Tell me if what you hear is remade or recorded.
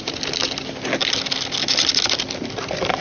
recorded